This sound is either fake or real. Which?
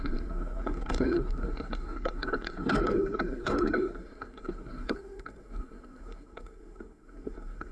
fake